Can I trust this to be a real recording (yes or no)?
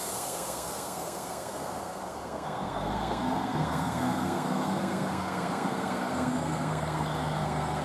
no